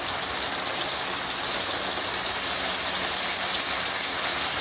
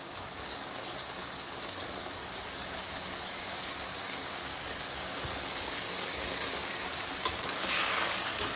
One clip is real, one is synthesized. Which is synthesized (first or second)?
second